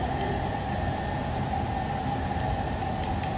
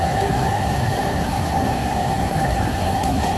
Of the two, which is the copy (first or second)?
second